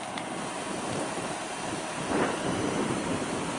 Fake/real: fake